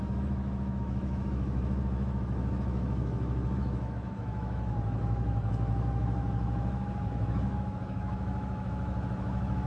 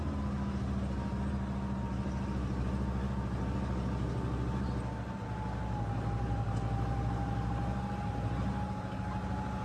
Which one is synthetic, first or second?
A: first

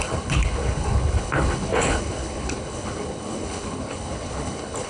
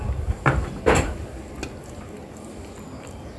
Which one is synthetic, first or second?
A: first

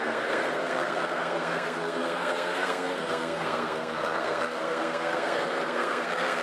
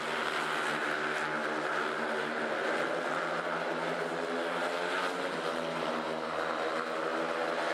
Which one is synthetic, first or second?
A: first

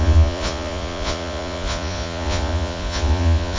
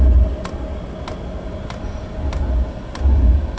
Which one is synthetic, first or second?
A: first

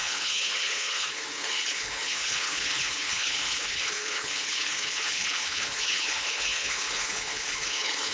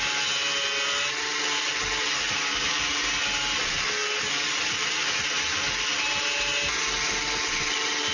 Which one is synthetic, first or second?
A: first